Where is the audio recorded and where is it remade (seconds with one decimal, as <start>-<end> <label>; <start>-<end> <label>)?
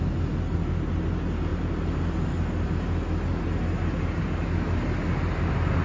0.0-5.8 recorded